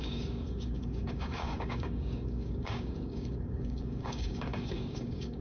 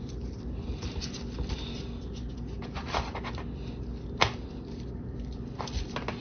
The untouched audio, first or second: second